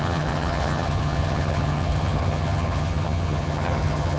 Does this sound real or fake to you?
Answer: fake